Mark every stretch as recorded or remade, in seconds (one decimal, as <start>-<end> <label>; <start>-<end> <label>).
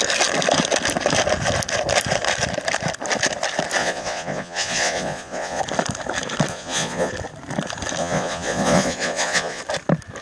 0.0-3.8 recorded; 3.8-5.6 remade; 5.6-6.5 recorded; 6.5-7.1 remade; 7.1-8.0 recorded; 8.0-9.6 remade; 9.6-10.2 recorded